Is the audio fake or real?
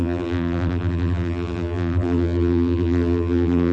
fake